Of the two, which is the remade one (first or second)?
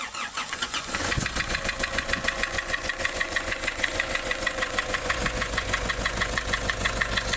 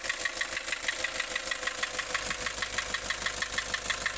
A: first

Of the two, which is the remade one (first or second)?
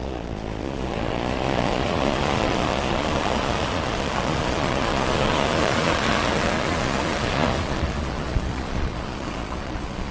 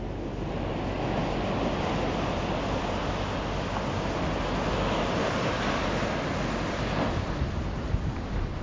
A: first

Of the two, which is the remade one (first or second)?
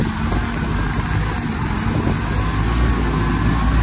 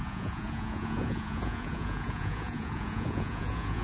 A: second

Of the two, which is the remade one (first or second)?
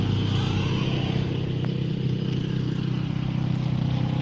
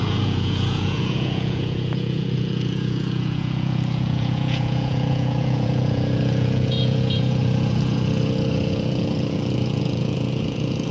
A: second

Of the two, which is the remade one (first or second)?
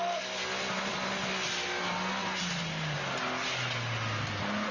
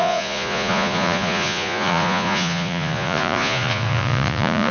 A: second